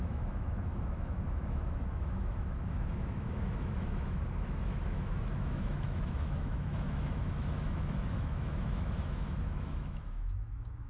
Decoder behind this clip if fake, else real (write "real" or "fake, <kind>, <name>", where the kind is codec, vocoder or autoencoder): fake, autoencoder, DAC-VAE